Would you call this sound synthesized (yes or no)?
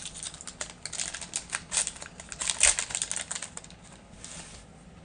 no